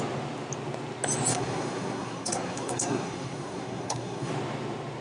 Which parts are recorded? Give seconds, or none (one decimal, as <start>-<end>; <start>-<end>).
0.0-1.3; 4.3-5.0